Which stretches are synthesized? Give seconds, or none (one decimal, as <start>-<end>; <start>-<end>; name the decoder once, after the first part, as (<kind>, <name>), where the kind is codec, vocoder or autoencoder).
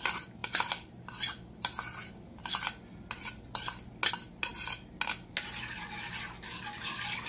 none